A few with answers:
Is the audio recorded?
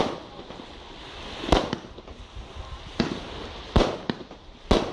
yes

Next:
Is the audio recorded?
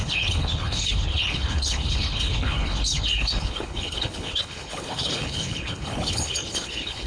no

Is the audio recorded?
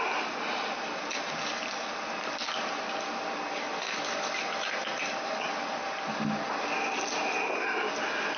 yes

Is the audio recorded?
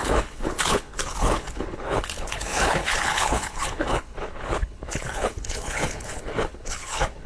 no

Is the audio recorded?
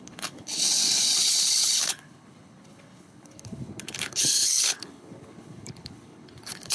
no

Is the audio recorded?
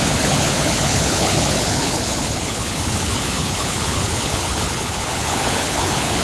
no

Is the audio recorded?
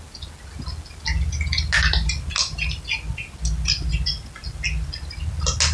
yes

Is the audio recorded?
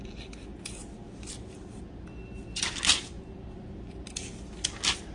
yes